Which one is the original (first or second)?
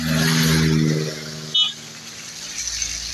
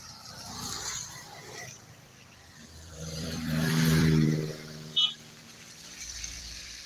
first